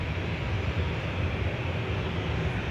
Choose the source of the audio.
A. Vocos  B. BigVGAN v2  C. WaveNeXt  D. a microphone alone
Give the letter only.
D